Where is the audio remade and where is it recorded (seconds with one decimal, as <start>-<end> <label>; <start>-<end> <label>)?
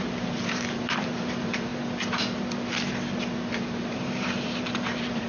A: 0.0-1.7 remade; 1.7-3.5 recorded; 3.5-5.3 remade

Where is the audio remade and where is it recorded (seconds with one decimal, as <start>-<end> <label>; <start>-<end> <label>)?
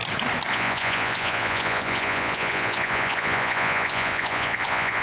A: 0.0-0.5 recorded; 0.5-5.0 remade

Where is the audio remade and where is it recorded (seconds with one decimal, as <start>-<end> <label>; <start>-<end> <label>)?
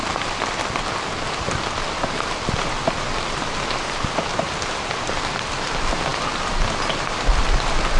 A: 0.0-8.0 recorded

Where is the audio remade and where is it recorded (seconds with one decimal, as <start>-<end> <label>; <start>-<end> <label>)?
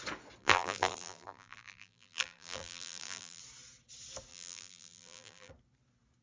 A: 0.0-0.4 recorded; 0.4-3.4 remade; 3.4-4.3 recorded; 4.3-5.5 remade; 5.5-6.2 recorded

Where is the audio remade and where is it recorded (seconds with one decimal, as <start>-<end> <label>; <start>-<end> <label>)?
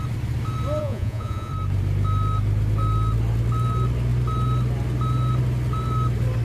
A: 0.0-0.8 recorded; 0.8-1.5 remade; 1.5-6.4 recorded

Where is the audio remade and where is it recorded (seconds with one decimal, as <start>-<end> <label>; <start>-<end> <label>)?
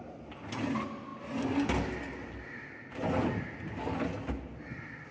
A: 0.0-5.1 recorded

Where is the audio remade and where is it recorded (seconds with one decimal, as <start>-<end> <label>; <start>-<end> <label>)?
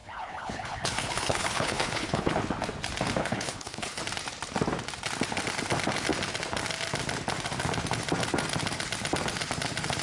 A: 0.0-2.3 remade; 2.3-3.2 recorded; 3.2-4.0 remade; 4.0-10.0 recorded